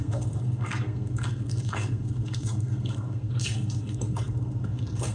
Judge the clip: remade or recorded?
remade